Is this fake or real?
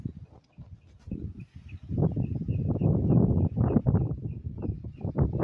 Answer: real